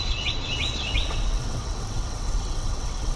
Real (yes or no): no